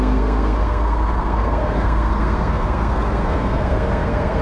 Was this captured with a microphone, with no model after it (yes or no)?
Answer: no